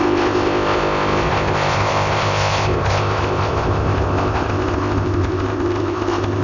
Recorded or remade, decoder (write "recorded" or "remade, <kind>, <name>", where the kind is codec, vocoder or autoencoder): remade, codec, ZipCodec